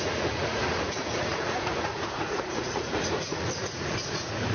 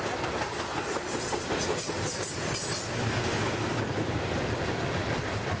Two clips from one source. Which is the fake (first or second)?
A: first